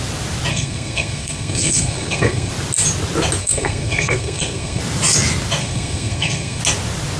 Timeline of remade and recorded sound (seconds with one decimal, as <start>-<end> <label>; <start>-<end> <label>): 0.0-0.5 recorded; 0.5-2.5 remade; 2.5-3.4 recorded; 3.4-4.8 remade; 4.8-5.6 recorded; 5.6-6.6 remade; 6.6-7.2 recorded